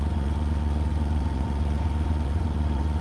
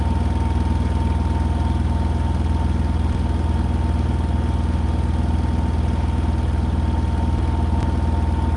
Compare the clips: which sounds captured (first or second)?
second